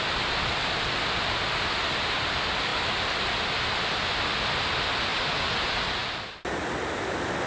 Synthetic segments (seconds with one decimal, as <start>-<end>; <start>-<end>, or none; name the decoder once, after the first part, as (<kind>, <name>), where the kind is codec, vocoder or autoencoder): none

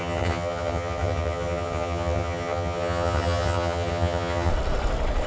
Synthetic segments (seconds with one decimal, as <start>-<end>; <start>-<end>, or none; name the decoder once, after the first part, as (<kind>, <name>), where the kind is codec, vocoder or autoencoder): 0.0-4.5 (vocoder, HiFi-GAN)

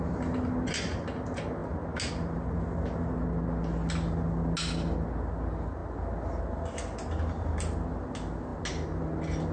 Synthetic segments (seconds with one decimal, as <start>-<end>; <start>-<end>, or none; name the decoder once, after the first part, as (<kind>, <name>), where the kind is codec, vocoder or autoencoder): none